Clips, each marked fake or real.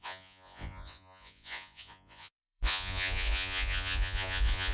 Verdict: fake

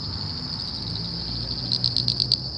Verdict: real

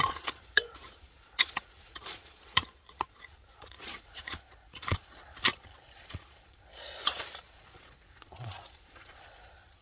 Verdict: fake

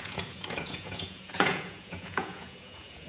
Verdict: fake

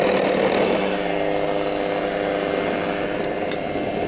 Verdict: real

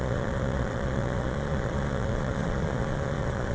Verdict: fake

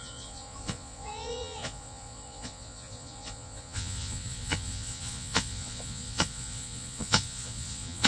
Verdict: fake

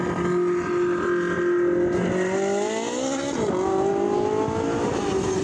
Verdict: real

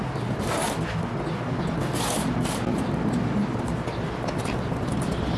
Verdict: real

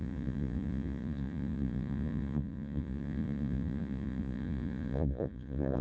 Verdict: fake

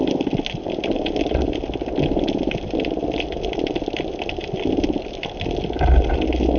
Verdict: real